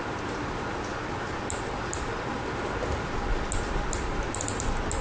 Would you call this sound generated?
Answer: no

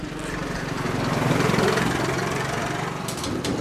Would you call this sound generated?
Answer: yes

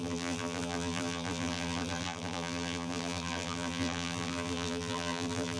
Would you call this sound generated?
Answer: yes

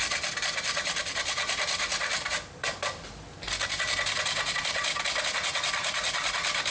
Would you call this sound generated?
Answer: no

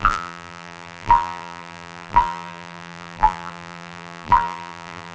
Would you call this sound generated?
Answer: yes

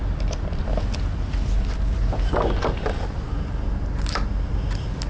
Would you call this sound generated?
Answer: no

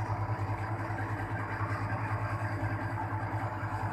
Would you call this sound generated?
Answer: yes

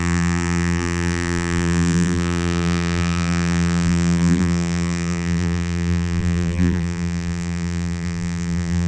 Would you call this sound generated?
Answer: yes